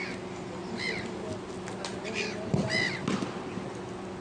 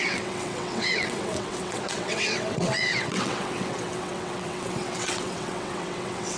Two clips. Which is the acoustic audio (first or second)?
first